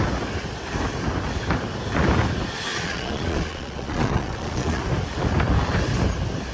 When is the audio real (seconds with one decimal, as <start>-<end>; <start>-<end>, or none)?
0.0-2.7; 4.8-6.5